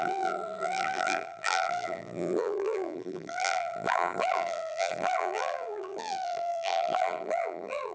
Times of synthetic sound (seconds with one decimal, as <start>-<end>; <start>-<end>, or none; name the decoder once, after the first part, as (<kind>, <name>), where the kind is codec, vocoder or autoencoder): 0.0-7.9 (vocoder, BigVGAN v2)

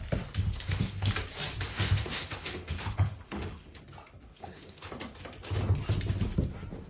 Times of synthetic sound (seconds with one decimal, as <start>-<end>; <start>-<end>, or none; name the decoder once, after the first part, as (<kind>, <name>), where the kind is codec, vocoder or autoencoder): 0.4-1.1 (autoencoder, DAC-VAE); 1.7-3.8; 4.3-4.9

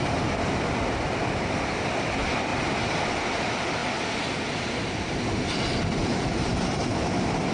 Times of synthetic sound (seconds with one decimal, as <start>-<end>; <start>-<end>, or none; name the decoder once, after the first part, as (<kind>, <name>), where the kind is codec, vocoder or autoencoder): none

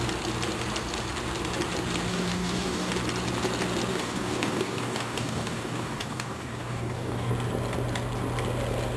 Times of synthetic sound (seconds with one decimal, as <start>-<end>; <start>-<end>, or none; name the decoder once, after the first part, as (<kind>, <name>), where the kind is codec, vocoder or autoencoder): 2.1-2.9 (codec, DAC); 3.9-7.3

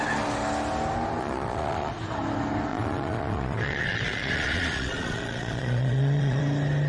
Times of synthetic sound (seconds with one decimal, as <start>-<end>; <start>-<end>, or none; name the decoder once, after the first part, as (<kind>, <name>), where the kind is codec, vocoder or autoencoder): 1.2-1.9 (vocoder, Vocos); 2.7-6.4

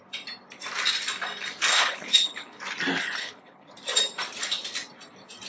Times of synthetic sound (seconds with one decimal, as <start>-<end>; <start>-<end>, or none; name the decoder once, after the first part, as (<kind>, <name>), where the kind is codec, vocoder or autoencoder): 1.7-2.6 (codec, HILCodec); 3.2-3.7